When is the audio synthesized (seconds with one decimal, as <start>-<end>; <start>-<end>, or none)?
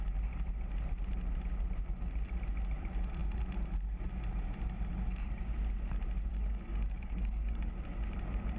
6.3-7.7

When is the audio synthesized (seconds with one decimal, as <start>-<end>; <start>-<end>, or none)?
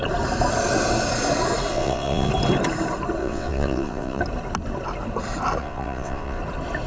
1.7-2.3; 3.2-4.2; 5.6-6.4